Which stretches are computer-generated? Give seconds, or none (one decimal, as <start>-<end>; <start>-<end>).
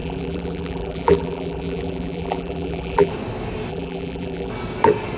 0.0-3.1; 3.7-4.5